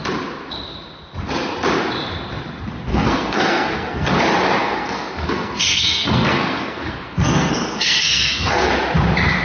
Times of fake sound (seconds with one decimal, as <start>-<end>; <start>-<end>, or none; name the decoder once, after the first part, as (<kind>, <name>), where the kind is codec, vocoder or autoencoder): 2.9-4.1 (codec, SNAC); 4.6-8.7